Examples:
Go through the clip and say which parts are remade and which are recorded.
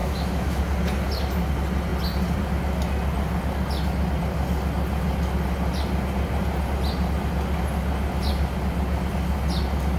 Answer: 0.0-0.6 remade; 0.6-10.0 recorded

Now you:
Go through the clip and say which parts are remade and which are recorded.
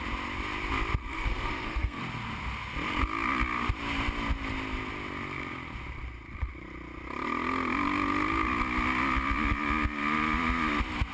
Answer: 0.0-1.0 recorded; 1.0-2.0 remade; 2.0-11.1 recorded